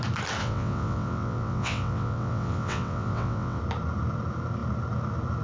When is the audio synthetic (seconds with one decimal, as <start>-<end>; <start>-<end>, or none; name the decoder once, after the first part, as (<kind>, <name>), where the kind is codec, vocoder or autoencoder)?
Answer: 0.4-3.6 (vocoder, WaveNeXt)